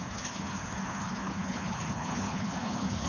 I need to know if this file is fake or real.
fake